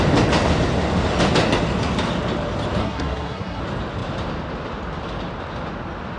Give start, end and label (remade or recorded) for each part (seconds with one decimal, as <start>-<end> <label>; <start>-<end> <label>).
0.0-2.8 recorded; 2.8-3.6 remade; 3.6-6.2 recorded